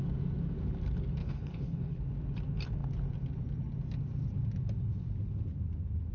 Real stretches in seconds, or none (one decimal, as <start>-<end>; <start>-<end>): 0.0-1.2; 2.0-6.1